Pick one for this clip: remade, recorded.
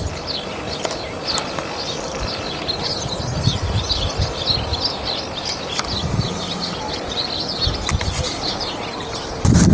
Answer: recorded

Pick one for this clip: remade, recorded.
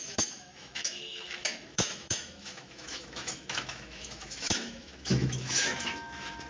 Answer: remade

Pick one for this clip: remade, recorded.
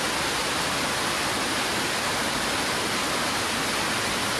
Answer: recorded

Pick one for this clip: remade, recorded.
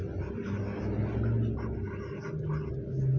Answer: recorded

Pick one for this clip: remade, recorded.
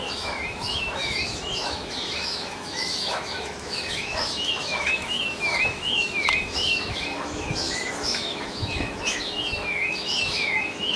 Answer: remade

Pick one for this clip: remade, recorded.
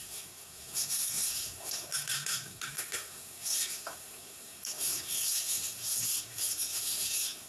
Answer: remade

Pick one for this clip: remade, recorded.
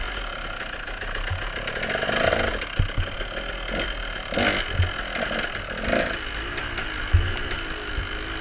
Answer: recorded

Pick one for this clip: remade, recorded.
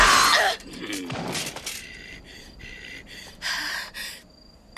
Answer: recorded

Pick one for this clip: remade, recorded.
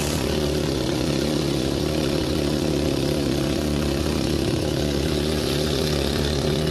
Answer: remade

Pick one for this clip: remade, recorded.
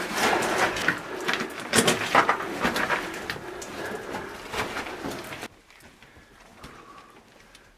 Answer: recorded